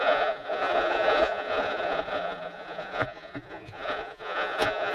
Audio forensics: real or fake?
fake